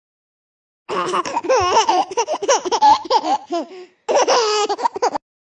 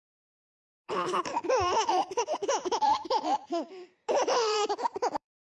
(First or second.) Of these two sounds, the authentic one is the first